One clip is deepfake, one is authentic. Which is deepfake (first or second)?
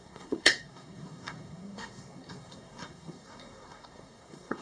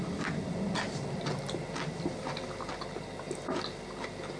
first